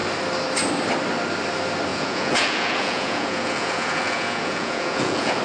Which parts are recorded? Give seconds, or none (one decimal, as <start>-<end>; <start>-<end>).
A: 0.0-1.9